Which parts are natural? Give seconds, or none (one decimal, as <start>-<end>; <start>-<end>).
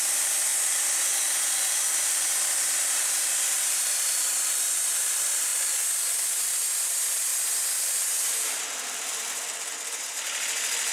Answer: 7.3-8.6